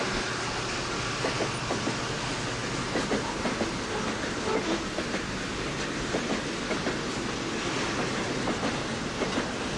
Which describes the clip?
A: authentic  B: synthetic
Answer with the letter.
A